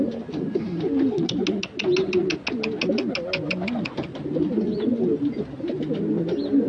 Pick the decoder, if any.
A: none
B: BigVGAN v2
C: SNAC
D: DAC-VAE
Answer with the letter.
A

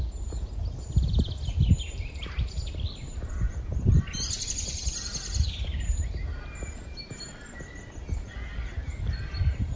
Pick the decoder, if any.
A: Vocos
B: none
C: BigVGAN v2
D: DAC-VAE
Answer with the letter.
C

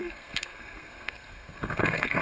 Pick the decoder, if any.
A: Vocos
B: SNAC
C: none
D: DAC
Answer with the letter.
B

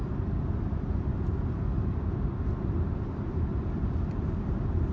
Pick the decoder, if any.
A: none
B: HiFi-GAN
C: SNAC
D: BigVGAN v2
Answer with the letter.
D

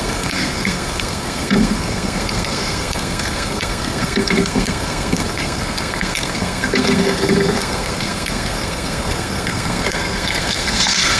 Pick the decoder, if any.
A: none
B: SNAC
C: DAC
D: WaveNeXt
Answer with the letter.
B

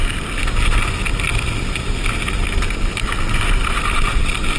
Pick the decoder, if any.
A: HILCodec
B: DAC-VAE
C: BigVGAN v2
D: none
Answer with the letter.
D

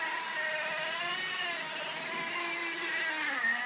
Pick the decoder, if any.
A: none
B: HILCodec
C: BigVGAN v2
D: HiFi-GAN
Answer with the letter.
A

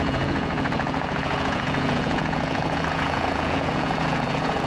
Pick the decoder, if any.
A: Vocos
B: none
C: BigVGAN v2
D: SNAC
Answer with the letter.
A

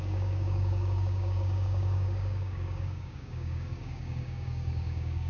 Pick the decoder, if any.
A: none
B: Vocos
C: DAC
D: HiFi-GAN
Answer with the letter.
C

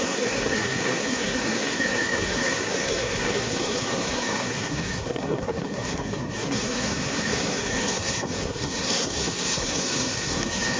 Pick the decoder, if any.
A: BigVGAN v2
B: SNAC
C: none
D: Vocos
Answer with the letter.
B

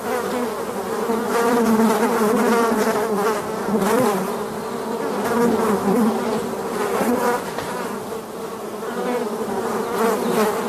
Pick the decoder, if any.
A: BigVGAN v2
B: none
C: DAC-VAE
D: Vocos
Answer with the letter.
B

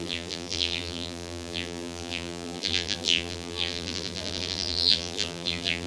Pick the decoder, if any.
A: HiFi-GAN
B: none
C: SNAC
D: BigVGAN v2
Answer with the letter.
D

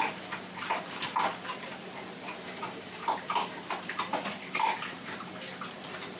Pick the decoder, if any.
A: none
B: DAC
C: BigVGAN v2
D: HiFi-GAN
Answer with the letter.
A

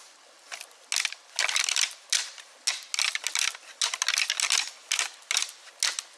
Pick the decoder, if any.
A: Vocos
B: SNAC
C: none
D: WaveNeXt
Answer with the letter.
C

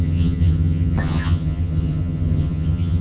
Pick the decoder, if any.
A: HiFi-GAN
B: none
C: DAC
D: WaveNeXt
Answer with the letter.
A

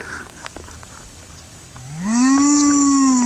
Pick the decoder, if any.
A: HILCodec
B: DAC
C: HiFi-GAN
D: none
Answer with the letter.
B